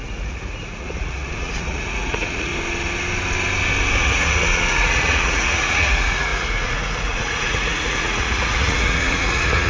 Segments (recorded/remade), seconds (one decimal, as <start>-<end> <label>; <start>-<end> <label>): 0.0-2.5 remade; 2.5-4.0 recorded; 4.0-9.7 remade